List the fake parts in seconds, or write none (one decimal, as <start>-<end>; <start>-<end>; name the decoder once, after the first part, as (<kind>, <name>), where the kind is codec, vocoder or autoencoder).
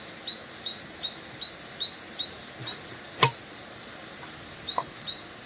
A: 0.0-5.5 (vocoder, BigVGAN v2)